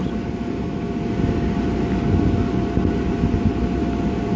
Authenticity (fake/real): real